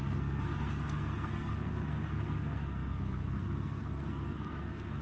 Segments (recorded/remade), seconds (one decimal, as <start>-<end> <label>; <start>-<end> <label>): 0.0-5.0 remade